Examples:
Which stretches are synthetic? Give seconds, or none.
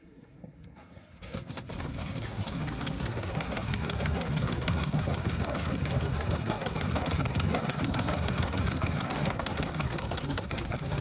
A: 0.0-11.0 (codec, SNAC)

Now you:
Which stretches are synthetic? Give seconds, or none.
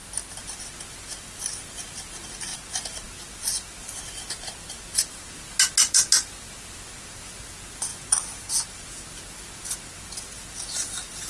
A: none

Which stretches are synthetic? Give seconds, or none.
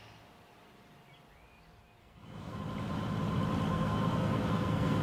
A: 2.0-2.6 (codec, SNAC); 3.7-5.0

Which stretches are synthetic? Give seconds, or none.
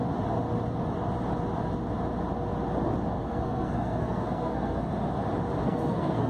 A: 3.2-4.9 (codec, SNAC); 5.6-6.3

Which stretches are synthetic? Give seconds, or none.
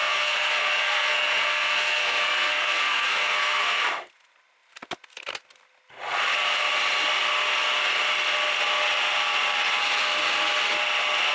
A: 0.0-3.8 (codec, SNAC)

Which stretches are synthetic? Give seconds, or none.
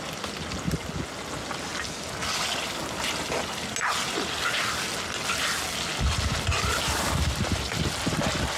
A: none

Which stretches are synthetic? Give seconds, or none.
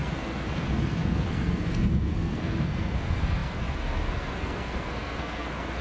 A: 0.0-5.8 (codec, SNAC)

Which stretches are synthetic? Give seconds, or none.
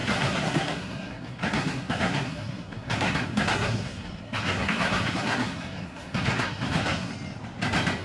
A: 0.0-7.1 (codec, SNAC)